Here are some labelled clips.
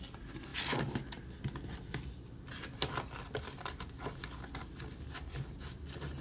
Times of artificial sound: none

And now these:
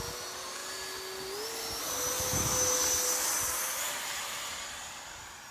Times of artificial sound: 3.6-4.6 (vocoder, BigVGAN v2)

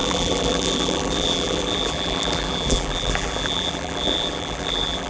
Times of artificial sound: 0.0-5.1 (vocoder, BigVGAN v2)

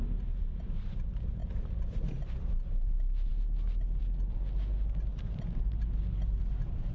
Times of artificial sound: 5.1-6.9 (vocoder, BigVGAN v2)

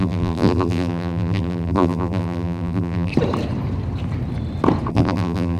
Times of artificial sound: 0.0-3.1 (vocoder, BigVGAN v2); 4.9-5.6

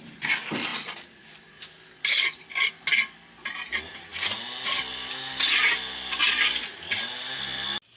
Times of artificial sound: 0.7-1.5 (vocoder, BigVGAN v2)

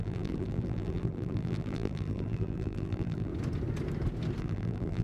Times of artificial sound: 0.0-3.3 (vocoder, BigVGAN v2); 4.4-5.0

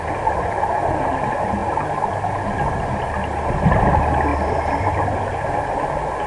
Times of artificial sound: 1.6-3.9 (vocoder, BigVGAN v2); 4.3-5.8